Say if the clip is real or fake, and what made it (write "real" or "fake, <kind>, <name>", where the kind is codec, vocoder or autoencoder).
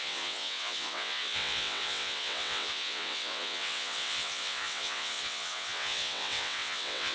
fake, vocoder, WaveNeXt